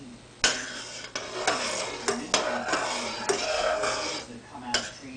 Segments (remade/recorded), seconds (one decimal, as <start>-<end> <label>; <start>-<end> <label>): 0.0-3.5 recorded; 3.5-4.1 remade; 4.1-5.2 recorded